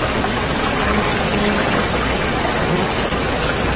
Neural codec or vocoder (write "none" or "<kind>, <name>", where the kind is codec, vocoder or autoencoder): none